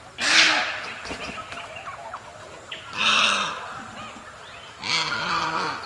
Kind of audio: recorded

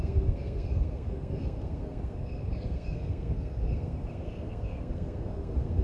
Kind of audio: remade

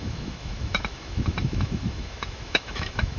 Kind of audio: remade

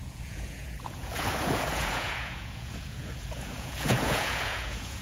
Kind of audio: remade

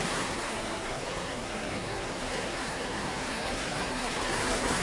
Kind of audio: remade